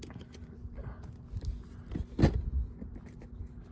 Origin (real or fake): real